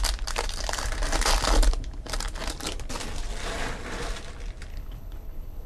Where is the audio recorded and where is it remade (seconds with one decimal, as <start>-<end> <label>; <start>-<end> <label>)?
0.0-4.7 recorded; 4.7-5.7 remade